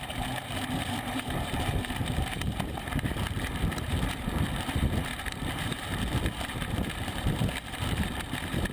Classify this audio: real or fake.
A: fake